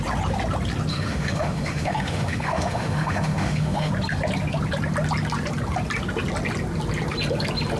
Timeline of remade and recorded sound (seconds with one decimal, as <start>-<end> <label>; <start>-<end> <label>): 0.0-0.9 recorded; 0.9-3.9 remade; 3.9-7.8 recorded